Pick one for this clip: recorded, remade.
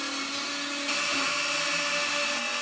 recorded